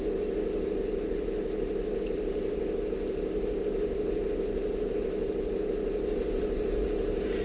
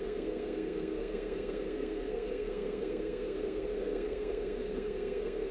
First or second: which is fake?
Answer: second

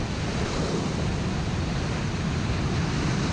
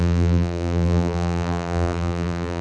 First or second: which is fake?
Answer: second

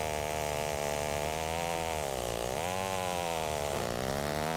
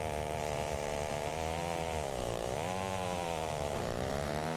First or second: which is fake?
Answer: second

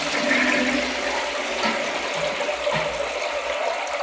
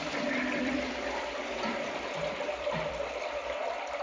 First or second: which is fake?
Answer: second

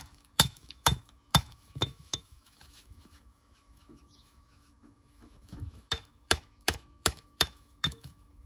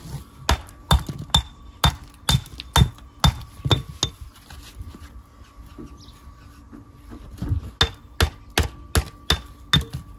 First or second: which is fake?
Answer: first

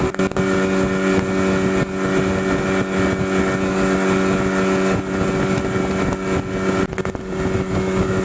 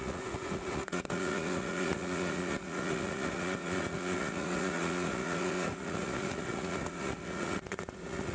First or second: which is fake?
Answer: second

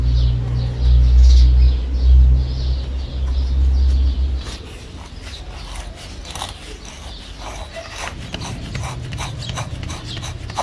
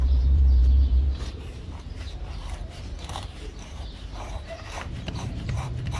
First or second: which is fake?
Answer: second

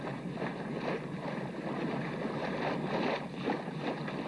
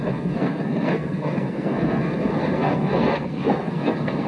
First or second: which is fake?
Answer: second